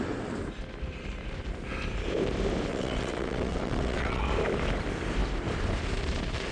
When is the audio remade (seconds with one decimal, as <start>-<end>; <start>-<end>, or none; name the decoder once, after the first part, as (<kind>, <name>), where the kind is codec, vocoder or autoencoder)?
2.7-4.2 (vocoder, WaveNeXt)